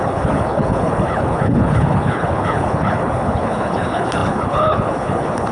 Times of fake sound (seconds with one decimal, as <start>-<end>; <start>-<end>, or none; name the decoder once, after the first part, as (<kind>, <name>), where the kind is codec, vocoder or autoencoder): 0.0-5.5 (codec, HILCodec)